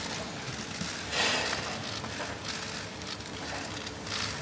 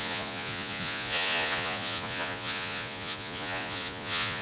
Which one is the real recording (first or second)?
first